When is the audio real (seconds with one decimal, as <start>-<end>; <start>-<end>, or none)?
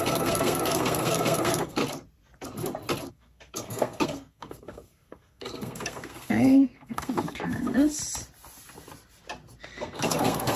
1.8-3.1; 8.0-9.6